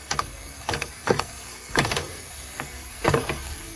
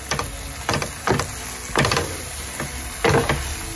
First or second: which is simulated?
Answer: first